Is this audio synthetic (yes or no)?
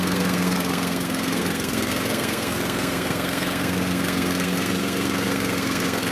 yes